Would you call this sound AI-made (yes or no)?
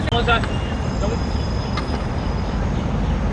no